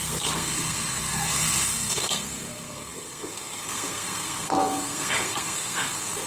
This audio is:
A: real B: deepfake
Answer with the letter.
B